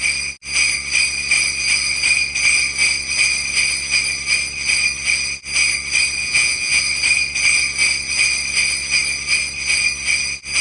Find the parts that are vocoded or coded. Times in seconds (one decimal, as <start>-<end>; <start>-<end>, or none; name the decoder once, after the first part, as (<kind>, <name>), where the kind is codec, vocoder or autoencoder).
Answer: 6.2-6.8 (vocoder, Vocos)